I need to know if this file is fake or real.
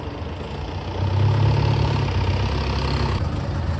real